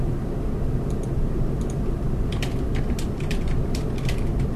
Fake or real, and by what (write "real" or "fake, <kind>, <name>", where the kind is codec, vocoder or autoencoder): fake, vocoder, BigVGAN v2